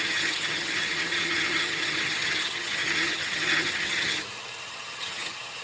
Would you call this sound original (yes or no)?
no